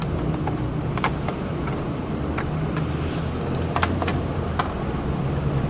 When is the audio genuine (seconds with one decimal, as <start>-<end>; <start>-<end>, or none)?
0.0-5.7